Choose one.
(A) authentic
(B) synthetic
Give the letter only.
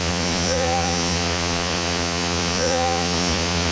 B